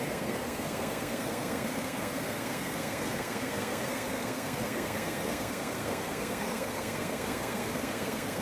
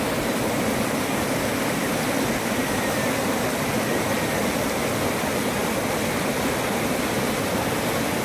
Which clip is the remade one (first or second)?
first